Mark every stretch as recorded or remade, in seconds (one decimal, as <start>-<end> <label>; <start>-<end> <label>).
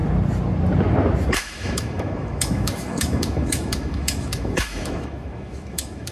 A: 0.0-1.3 recorded; 1.3-6.1 remade